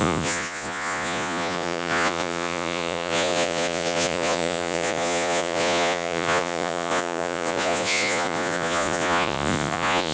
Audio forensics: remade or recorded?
remade